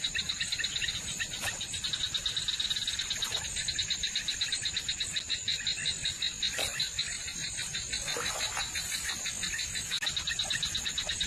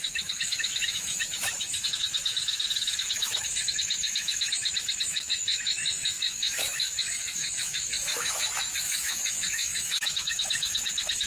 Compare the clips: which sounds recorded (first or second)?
first